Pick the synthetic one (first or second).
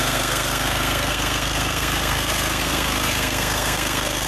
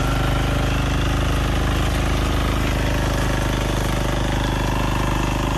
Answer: first